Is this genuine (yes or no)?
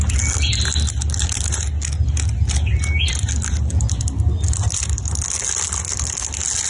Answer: yes